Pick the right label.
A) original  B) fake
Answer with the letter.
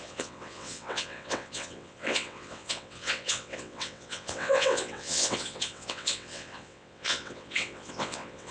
B